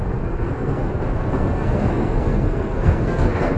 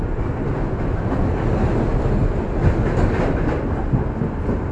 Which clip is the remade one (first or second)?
first